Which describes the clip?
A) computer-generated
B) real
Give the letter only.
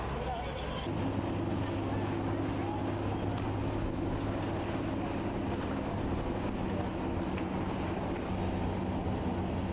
B